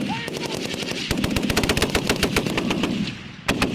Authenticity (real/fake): real